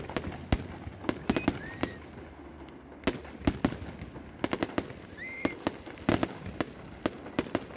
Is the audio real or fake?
real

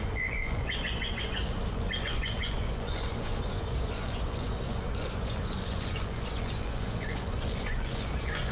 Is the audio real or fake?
fake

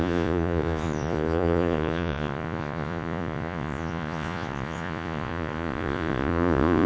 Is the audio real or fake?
fake